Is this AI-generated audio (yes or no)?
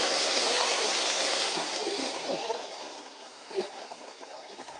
yes